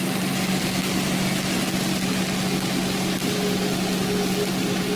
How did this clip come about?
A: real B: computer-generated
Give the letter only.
A